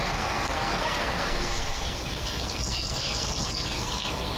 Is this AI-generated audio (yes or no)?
yes